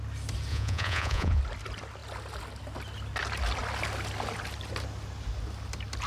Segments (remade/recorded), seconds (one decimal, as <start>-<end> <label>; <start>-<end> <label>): 0.0-0.5 recorded; 0.5-1.4 remade; 1.4-6.1 recorded